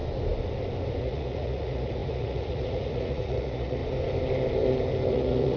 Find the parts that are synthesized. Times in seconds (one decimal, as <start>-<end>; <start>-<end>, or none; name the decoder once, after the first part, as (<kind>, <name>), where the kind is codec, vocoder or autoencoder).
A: 1.0-3.8 (vocoder, Vocos); 5.1-5.6